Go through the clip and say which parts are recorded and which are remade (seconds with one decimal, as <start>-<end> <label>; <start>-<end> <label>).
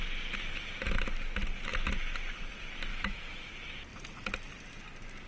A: 0.0-2.9 recorded; 2.9-3.5 remade; 3.5-5.3 recorded